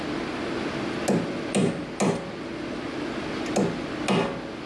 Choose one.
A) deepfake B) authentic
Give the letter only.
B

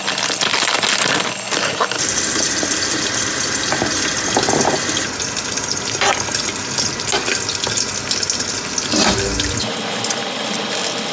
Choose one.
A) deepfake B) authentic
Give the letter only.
B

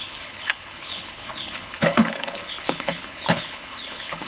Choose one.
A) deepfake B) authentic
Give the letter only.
A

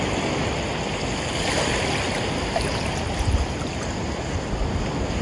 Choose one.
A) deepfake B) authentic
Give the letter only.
B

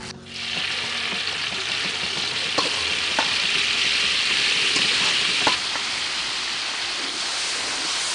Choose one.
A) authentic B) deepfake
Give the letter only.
A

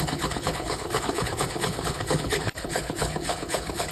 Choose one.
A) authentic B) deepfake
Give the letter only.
B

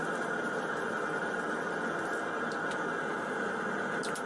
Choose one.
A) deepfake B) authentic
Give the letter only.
B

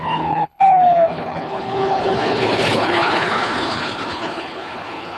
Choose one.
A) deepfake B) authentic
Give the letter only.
A